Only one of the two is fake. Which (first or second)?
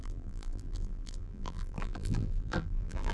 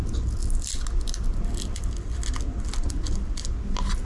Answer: first